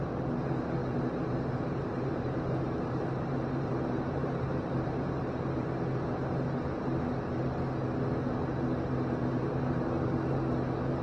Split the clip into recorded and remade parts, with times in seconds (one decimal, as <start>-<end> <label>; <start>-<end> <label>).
0.0-0.8 recorded; 0.8-5.7 remade; 5.7-9.2 recorded; 9.2-10.4 remade; 10.4-11.0 recorded